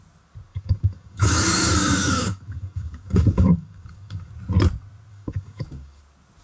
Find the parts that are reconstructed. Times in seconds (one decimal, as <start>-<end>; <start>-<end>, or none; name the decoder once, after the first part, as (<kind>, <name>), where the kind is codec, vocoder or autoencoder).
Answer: 0.5-4.3 (codec, DAC); 5.1-6.0